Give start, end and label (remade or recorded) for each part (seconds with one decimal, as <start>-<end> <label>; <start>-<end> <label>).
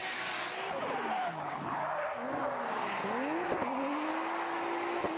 0.0-1.3 recorded; 1.3-1.8 remade; 1.8-5.2 recorded